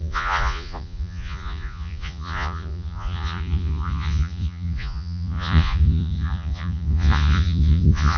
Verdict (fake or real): fake